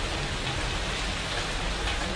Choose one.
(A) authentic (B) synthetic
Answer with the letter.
A